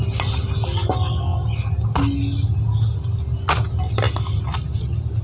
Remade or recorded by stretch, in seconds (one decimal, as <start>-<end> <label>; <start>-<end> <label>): 0.0-5.2 recorded